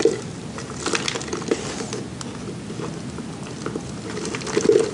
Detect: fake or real real